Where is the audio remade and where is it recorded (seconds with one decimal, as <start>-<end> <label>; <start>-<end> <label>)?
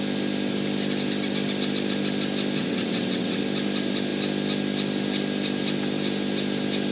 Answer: 0.0-2.6 recorded; 2.6-3.4 remade; 3.4-6.9 recorded